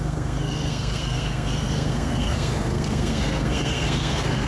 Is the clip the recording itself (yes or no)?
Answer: no